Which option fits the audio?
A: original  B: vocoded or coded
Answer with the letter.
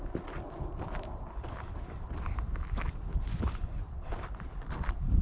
A